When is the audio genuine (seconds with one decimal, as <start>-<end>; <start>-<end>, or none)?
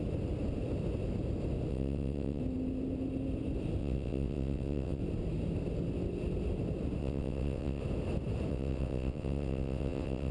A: 0.0-1.7; 2.4-3.8; 5.0-7.0; 7.8-8.5